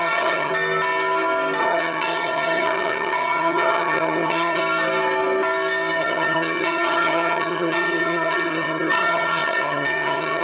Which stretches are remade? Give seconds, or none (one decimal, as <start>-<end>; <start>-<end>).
0.0-0.5; 1.6-4.6; 6.0-10.4